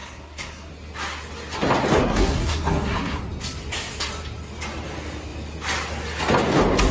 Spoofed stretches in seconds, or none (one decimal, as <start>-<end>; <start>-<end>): 0.0-0.7; 2.0-3.2